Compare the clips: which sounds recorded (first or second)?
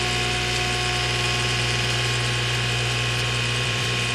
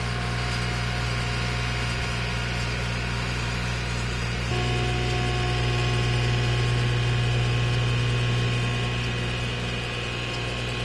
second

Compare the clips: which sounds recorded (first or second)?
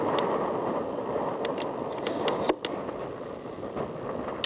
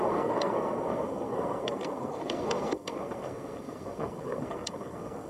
first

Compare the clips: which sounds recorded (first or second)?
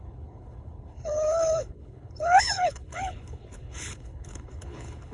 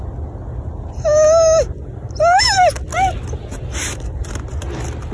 second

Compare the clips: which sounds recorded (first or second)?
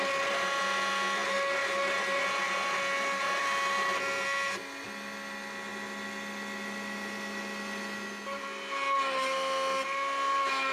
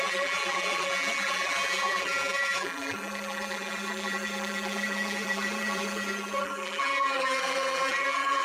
first